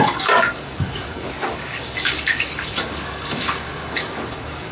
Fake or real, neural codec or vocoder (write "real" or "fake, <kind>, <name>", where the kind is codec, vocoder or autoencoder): fake, codec, DAC